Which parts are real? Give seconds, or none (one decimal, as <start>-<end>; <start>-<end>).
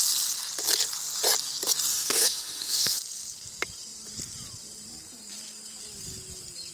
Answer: 0.0-1.9; 3.0-6.7